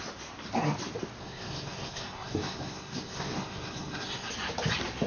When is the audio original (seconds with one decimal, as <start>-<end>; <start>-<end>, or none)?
0.0-1.2; 4.3-5.1